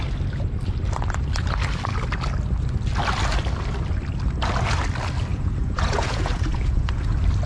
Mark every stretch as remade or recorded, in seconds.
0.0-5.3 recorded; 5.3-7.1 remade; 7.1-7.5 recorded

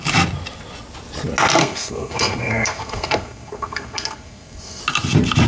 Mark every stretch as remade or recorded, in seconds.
0.0-1.6 recorded; 1.6-4.8 remade; 4.8-5.5 recorded

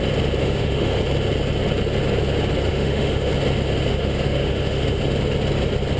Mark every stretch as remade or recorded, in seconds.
0.0-0.4 recorded; 0.4-1.0 remade; 1.0-2.7 recorded; 2.7-3.3 remade; 3.3-3.9 recorded; 3.9-5.0 remade; 5.0-6.0 recorded

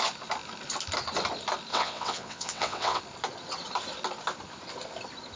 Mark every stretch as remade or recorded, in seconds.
0.0-1.7 recorded; 1.7-3.0 remade; 3.0-5.4 recorded